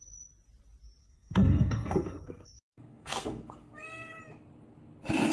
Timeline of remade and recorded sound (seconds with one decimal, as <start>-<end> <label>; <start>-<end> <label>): 0.0-1.0 recorded; 1.0-4.2 remade; 4.2-5.3 recorded